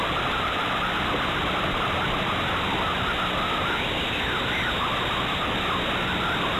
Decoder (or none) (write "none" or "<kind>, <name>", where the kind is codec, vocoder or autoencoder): none